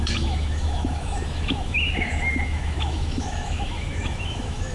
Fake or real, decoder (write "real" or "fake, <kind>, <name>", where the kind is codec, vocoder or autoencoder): fake, autoencoder, DAC-VAE